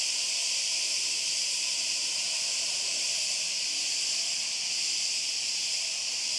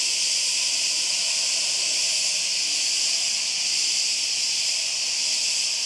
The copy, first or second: first